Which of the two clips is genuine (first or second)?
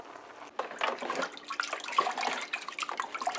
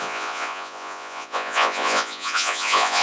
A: first